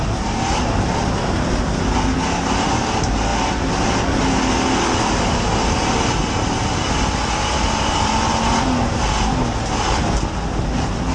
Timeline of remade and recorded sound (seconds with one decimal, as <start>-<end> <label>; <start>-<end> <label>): 0.0-11.1 recorded